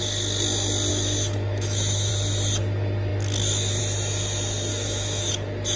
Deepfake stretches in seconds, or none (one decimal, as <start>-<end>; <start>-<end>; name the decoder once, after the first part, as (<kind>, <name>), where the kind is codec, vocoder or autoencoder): 0.9-2.1 (autoencoder, DAC-VAE); 4.7-5.3